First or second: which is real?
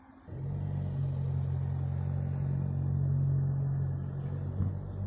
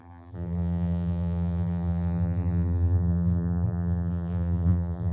first